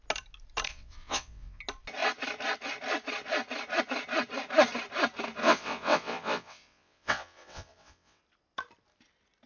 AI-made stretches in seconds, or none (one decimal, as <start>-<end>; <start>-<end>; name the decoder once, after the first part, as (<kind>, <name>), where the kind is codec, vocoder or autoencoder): 0.7-1.6 (vocoder, WaveNeXt); 5.4-8.2